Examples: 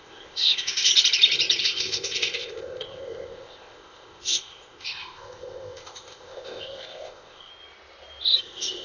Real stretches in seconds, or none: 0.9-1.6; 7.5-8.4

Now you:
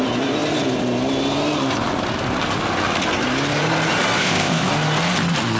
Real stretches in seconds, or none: 0.0-4.2; 4.7-5.6

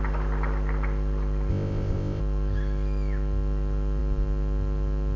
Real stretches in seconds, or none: 0.0-1.5; 2.2-5.2

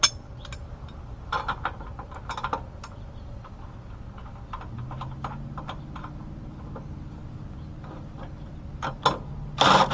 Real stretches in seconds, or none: 0.0-9.9

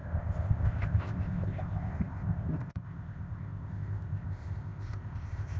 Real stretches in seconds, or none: none